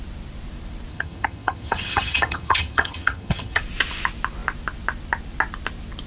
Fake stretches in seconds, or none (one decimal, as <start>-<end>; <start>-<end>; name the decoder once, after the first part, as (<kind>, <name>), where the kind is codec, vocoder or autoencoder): 0.9-3.6 (vocoder, HiFi-GAN)